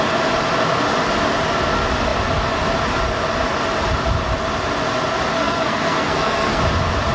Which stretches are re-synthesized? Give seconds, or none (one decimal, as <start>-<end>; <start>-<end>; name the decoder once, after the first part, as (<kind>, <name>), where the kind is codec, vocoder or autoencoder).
5.3-6.6 (codec, SNAC)